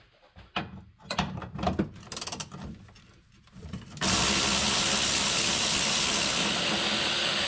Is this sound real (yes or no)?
yes